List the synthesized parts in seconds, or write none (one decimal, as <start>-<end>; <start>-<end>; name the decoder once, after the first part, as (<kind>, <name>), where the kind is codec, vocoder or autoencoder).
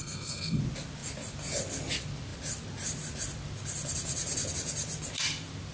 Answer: 0.0-0.6 (codec, SNAC)